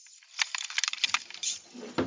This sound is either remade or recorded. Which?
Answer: recorded